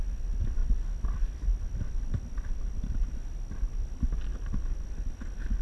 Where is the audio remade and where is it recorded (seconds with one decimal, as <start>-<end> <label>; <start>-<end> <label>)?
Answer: 0.0-5.6 recorded